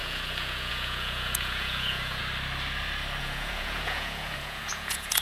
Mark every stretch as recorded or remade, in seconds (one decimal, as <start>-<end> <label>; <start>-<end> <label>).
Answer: 0.0-2.2 remade; 2.2-3.2 recorded; 3.2-5.2 remade